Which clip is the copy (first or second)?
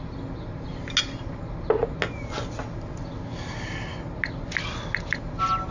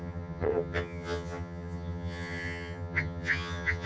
second